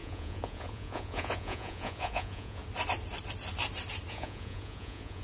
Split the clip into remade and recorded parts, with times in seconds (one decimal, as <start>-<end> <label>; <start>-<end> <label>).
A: 0.0-2.6 remade; 2.6-4.1 recorded; 4.1-5.2 remade